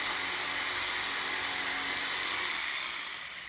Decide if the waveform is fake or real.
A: real